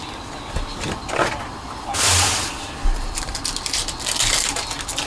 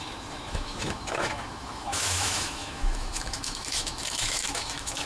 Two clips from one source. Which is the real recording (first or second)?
first